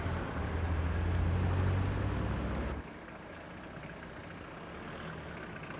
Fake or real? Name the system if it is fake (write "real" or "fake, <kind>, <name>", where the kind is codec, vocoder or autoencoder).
real